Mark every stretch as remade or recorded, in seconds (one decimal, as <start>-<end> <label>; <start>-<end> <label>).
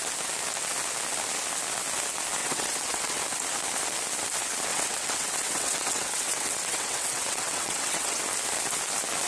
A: 0.0-2.4 recorded; 2.4-3.2 remade; 3.2-4.7 recorded; 4.7-8.2 remade; 8.2-9.3 recorded